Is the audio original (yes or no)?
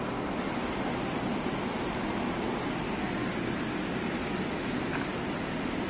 yes